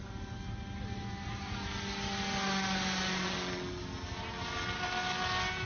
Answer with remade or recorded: recorded